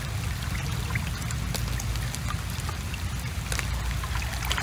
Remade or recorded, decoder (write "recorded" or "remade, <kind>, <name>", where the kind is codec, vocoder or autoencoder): recorded